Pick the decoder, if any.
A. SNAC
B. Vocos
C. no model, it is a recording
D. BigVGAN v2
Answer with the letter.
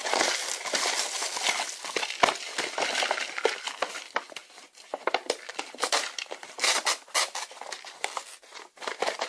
C